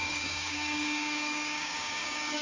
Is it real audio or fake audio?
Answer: fake